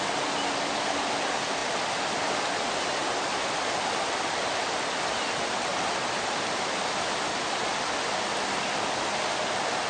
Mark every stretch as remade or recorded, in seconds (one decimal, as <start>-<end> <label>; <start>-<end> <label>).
0.0-7.7 remade; 7.7-9.9 recorded